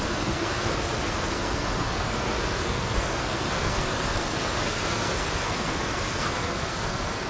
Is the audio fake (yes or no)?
yes